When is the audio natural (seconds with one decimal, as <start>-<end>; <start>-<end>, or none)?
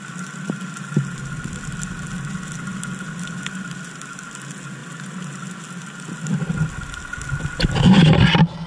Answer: 0.0-8.7